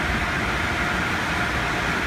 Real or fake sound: real